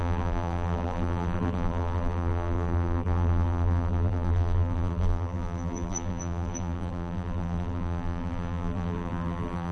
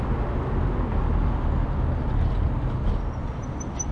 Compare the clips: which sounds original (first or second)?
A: second